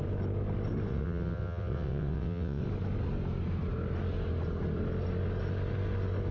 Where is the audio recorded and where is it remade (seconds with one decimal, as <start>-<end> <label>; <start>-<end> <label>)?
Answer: 0.0-0.9 recorded; 0.9-2.6 remade; 2.6-6.3 recorded